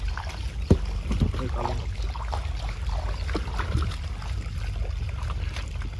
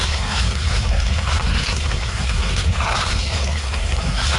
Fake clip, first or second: second